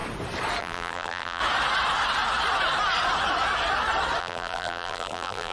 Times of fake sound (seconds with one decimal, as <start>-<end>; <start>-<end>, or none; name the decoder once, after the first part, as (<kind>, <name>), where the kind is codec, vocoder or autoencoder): 0.6-1.4 (vocoder, BigVGAN v2); 4.2-5.5